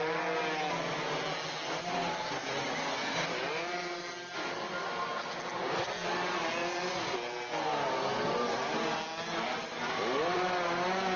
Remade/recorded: recorded